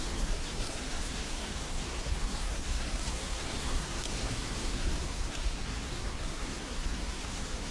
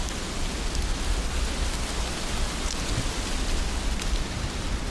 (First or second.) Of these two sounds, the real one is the second